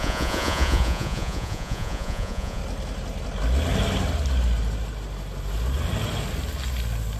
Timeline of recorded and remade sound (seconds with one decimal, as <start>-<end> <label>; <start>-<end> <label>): 0.0-2.6 remade; 2.6-7.2 recorded